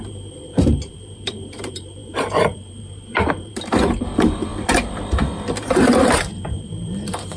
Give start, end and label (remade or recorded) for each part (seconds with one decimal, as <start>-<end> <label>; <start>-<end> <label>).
0.0-4.5 remade; 4.5-5.6 recorded; 5.6-7.4 remade